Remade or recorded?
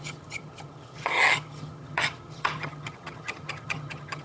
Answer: remade